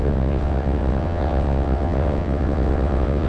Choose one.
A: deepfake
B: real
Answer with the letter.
A